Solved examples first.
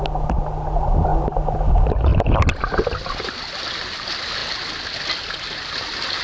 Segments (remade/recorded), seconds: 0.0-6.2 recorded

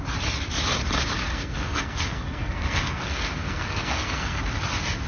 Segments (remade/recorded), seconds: 0.0-1.3 recorded; 1.3-4.4 remade; 4.4-5.1 recorded